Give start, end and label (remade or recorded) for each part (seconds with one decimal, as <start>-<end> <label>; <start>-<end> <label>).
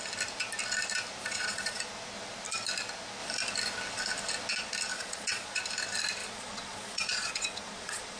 0.0-1.2 recorded; 1.2-1.8 remade; 1.8-4.9 recorded; 4.9-5.6 remade; 5.6-6.2 recorded; 6.2-8.2 remade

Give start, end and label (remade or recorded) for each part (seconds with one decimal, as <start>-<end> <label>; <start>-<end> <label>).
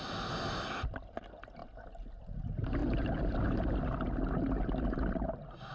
0.0-5.7 recorded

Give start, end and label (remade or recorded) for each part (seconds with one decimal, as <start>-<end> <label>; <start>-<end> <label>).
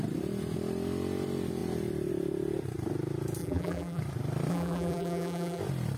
0.0-3.4 recorded; 3.4-4.0 remade; 4.0-4.5 recorded; 4.5-5.6 remade; 5.6-6.0 recorded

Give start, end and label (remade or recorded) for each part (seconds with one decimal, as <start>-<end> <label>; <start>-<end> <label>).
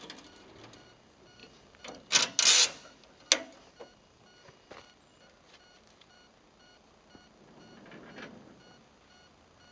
0.0-9.7 recorded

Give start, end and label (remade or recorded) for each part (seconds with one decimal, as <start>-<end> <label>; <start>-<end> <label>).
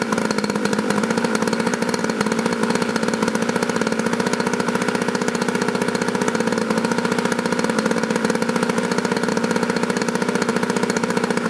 0.0-11.5 recorded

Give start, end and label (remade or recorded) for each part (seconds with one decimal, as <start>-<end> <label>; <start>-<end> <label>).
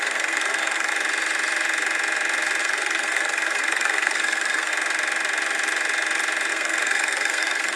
0.0-0.9 remade; 0.9-2.6 recorded; 2.6-4.7 remade; 4.7-6.5 recorded; 6.5-7.8 remade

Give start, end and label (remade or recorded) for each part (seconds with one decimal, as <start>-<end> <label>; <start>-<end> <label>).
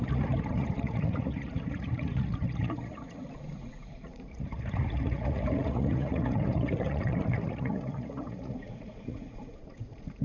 0.0-10.2 remade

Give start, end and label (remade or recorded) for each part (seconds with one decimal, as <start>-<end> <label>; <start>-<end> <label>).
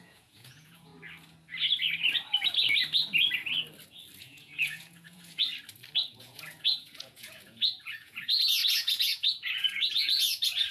0.0-0.9 remade; 0.9-4.2 recorded; 4.2-5.5 remade; 5.5-6.1 recorded; 6.1-10.7 remade